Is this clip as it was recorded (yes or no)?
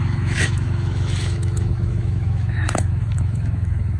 no